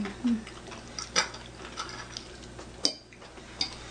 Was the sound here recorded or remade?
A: recorded